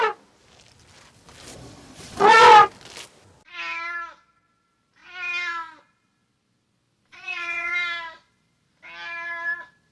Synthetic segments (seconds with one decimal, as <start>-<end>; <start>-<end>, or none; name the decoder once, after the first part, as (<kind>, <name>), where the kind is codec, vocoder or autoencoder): 1.5-2.4 (vocoder, Vocos); 7.1-7.7